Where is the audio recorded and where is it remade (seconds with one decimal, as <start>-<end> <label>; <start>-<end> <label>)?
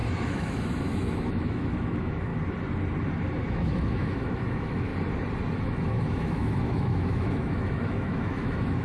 0.0-2.3 remade; 2.3-3.4 recorded; 3.4-4.9 remade; 4.9-5.6 recorded; 5.6-8.8 remade